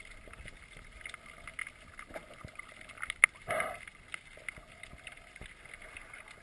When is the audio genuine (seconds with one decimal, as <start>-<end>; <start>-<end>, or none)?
0.0-6.4